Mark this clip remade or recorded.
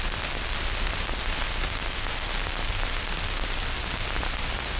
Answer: recorded